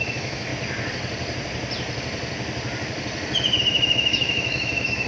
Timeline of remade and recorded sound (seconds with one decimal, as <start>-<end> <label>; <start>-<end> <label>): 0.0-0.5 remade; 0.5-3.6 recorded; 3.6-5.1 remade